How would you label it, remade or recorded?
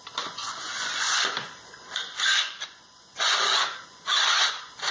remade